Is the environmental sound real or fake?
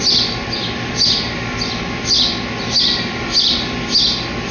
real